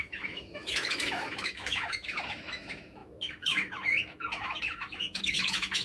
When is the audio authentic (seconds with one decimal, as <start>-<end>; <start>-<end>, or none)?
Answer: none